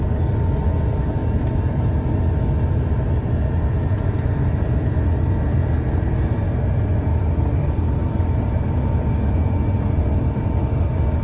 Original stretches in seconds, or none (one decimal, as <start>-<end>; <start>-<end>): 0.0-7.1; 8.4-11.2